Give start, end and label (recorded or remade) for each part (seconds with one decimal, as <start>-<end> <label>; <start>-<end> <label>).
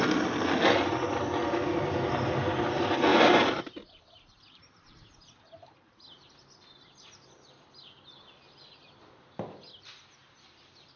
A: 0.0-11.0 recorded